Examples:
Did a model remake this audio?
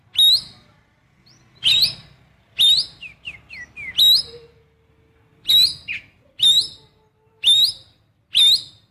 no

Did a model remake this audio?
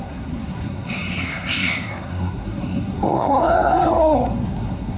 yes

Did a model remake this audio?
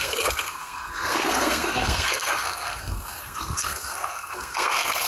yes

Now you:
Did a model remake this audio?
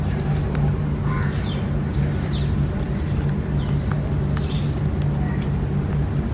no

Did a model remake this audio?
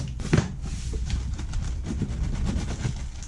no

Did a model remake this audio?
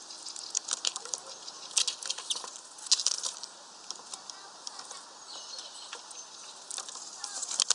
no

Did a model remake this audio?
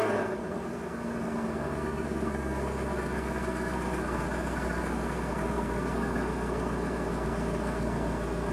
yes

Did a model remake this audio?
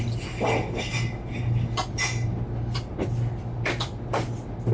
no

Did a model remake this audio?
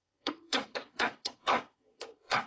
yes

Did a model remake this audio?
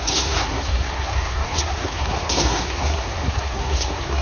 yes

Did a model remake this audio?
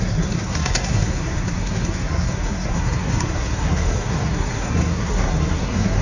yes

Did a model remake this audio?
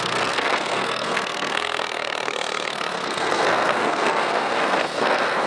yes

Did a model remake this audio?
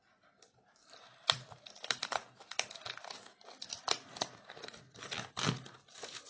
no